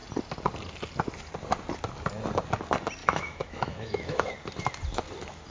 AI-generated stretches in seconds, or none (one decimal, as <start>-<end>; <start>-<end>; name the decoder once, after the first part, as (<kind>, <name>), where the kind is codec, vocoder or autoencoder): 3.0-4.3 (autoencoder, DAC-VAE)